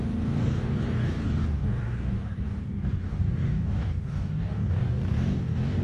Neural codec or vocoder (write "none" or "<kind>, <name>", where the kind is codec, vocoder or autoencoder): codec, DAC